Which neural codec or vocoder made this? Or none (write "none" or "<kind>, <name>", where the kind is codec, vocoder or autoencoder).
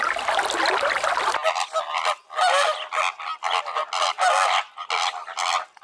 none